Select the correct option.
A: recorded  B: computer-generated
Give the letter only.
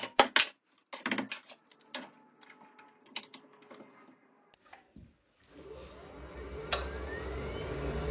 A